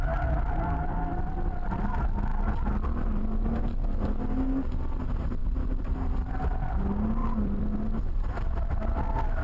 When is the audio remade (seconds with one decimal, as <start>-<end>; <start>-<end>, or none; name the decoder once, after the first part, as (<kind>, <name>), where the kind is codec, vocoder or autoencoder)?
5.4-6.3 (vocoder, BigVGAN v2); 7.2-8.7